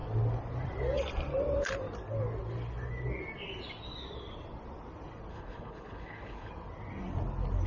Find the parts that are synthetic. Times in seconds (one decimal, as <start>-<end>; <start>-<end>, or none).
5.3-6.5